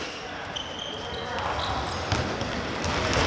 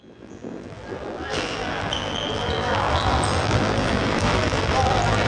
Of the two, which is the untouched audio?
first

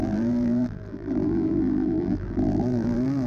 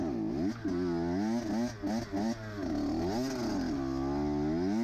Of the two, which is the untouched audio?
second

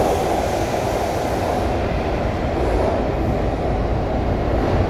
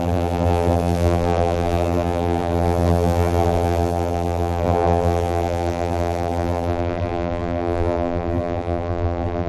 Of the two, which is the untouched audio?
first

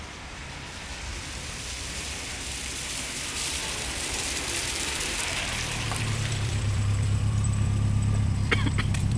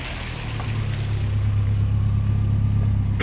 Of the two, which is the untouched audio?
second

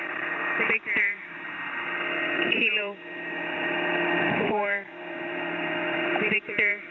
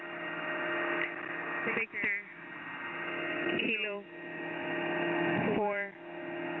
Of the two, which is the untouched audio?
second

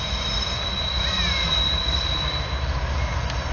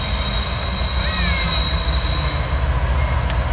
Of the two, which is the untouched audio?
second